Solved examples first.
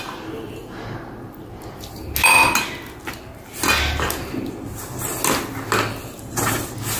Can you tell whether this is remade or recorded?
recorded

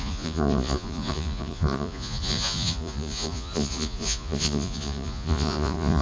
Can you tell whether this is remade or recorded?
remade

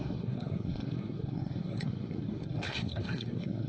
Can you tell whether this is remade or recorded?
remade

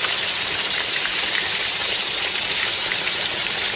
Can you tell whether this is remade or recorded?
remade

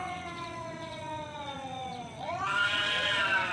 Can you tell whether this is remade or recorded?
remade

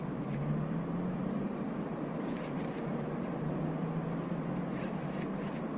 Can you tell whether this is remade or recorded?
recorded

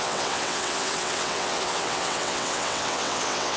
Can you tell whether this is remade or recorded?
remade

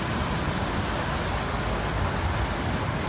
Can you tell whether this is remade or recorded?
recorded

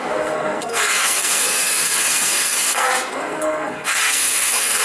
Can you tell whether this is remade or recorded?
remade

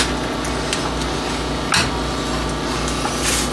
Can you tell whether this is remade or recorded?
recorded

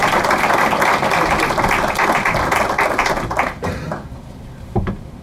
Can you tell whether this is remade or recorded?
recorded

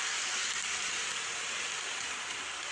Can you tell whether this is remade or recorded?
recorded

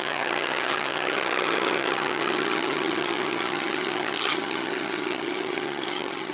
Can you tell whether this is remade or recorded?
remade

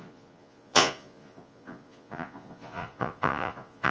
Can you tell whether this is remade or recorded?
remade